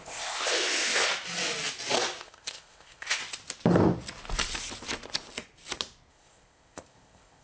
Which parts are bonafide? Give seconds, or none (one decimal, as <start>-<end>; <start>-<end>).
1.1-2.2; 3.2-6.1